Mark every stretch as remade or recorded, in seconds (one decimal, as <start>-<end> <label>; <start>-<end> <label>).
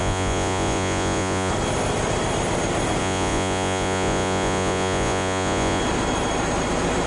0.0-1.5 remade; 1.5-3.0 recorded; 3.0-5.8 remade; 5.8-7.1 recorded